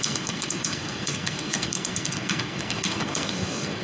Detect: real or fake fake